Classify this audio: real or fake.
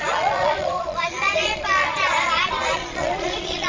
fake